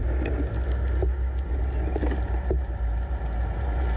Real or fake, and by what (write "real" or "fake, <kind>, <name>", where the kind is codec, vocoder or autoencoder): real